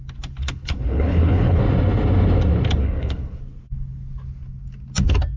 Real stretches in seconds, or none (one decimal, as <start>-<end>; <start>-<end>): 0.0-0.4; 1.6-2.8; 3.4-5.4